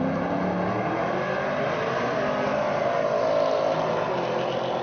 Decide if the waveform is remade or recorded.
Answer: recorded